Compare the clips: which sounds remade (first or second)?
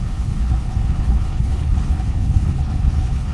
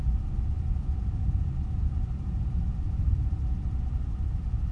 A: first